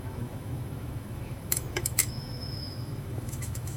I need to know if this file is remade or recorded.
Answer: remade